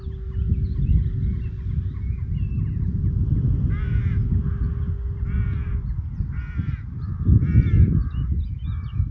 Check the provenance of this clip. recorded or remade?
recorded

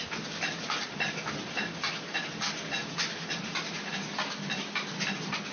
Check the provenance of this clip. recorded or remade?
recorded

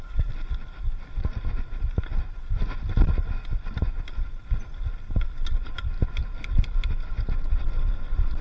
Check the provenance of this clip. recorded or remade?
recorded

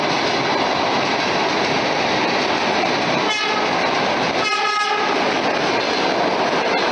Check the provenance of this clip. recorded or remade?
recorded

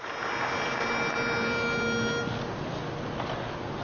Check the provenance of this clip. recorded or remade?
recorded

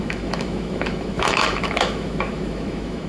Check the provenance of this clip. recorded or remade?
remade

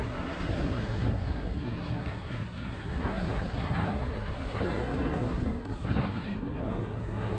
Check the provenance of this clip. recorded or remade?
remade